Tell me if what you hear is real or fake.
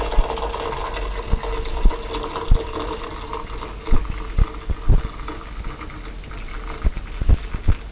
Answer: real